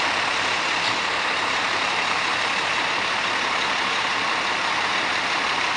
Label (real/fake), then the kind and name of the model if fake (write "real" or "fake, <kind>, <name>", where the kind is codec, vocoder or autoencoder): fake, vocoder, BigVGAN v2